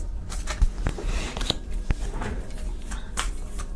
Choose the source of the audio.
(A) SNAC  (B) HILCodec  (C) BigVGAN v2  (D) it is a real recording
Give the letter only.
C